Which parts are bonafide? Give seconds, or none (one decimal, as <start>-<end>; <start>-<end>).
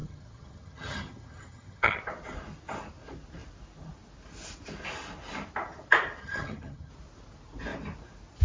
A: 2.0-6.2; 6.9-8.4